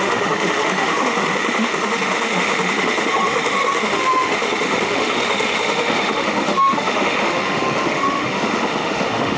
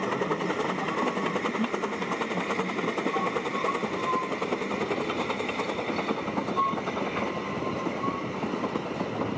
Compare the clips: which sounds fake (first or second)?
first